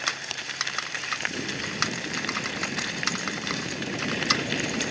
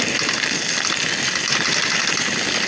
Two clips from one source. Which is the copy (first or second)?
first